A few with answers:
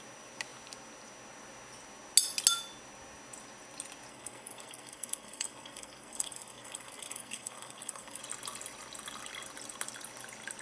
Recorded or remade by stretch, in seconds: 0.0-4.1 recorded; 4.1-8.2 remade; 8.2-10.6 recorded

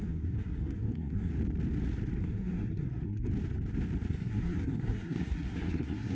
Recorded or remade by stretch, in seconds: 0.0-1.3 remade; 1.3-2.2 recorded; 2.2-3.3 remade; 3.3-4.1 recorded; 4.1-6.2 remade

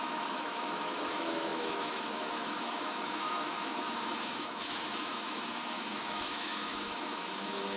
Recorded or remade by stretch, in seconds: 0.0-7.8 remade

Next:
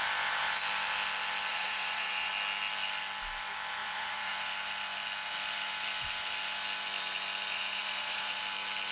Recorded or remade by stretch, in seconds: 0.0-1.5 recorded; 1.5-2.3 remade; 2.3-3.8 recorded; 3.8-4.3 remade; 4.3-7.5 recorded; 7.5-8.4 remade; 8.4-8.9 recorded

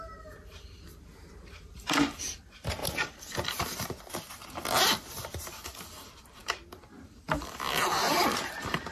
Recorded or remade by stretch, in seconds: 0.0-8.9 remade

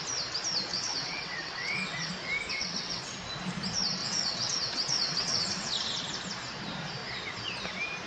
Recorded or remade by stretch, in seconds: 0.0-0.7 recorded; 0.7-2.1 remade; 2.1-2.5 recorded; 2.5-3.2 remade; 3.2-4.0 recorded; 4.0-5.7 remade; 5.7-8.1 recorded